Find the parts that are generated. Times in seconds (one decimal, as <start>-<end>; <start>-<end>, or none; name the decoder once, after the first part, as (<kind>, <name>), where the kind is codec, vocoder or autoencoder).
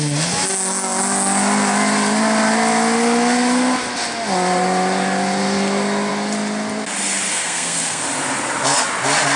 7.3-8.0 (codec, SNAC)